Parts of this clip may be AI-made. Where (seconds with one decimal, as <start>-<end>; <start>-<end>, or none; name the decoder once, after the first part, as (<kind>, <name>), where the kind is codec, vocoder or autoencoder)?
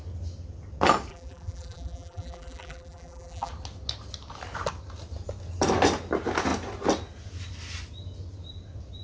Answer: 1.1-3.5 (vocoder, BigVGAN v2)